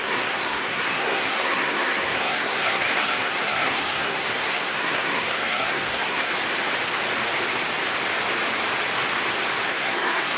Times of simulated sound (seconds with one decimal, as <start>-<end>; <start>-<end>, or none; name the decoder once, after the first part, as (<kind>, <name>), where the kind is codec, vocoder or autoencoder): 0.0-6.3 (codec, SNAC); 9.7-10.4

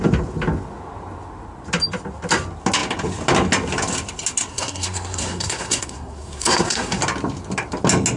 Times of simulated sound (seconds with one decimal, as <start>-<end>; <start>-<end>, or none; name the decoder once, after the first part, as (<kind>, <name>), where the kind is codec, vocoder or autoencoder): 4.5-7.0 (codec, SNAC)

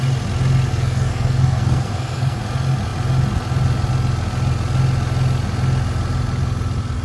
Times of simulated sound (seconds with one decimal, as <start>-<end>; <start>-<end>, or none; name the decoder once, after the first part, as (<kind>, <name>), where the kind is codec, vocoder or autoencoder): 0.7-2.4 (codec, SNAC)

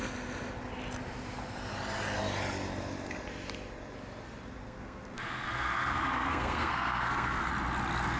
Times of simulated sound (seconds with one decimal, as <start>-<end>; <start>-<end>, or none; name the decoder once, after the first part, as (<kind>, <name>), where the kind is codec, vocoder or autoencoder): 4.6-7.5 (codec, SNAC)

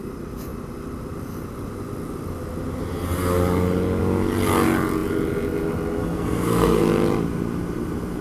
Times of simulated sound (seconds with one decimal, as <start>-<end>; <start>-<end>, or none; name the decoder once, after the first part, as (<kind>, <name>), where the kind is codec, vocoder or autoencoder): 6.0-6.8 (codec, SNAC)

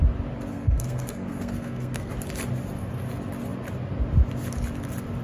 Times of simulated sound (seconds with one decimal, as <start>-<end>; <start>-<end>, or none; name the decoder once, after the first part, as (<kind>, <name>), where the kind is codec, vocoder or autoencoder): 0.5-2.1 (codec, SNAC)

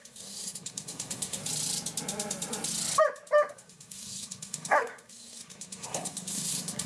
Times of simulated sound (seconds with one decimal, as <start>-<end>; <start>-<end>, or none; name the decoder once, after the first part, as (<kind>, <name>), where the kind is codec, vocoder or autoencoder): 0.0-1.4 (codec, SNAC); 3.5-6.9

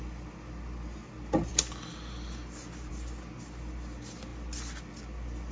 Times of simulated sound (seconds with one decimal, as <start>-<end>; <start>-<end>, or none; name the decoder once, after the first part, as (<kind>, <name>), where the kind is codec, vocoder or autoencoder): none